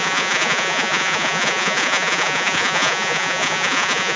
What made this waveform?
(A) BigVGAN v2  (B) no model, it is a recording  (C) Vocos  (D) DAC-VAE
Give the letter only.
C